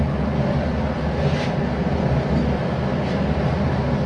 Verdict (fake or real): real